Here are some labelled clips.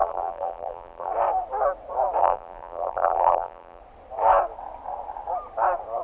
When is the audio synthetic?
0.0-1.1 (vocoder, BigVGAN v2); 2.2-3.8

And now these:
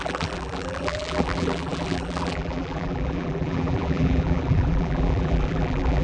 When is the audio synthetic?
0.0-6.0 (vocoder, BigVGAN v2)

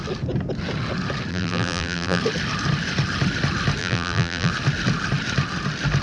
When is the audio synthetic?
1.3-2.2 (vocoder, BigVGAN v2); 3.8-4.5

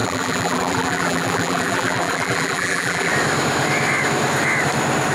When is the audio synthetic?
0.0-3.1 (vocoder, BigVGAN v2)

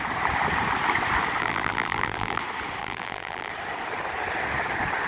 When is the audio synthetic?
1.4-2.4 (vocoder, BigVGAN v2); 2.8-3.5

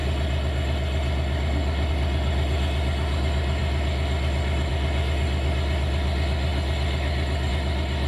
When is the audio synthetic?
none